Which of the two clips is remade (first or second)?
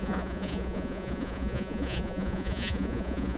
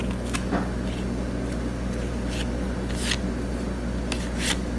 first